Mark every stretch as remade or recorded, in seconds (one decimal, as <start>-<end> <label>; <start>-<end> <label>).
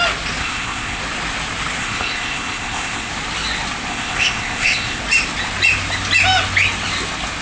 0.0-0.4 recorded; 0.4-1.0 remade; 1.0-1.8 recorded; 1.8-3.1 remade; 3.1-3.9 recorded; 3.9-5.0 remade; 5.0-7.4 recorded